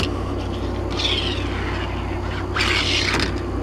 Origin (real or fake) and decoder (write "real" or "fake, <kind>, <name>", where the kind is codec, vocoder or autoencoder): real